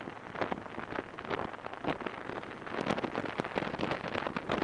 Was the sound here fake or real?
real